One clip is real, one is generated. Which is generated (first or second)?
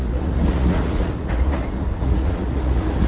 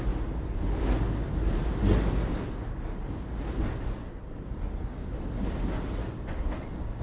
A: first